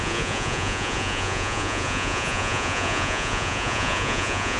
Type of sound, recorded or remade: remade